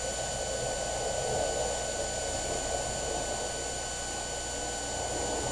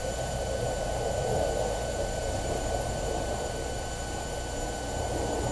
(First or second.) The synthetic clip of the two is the second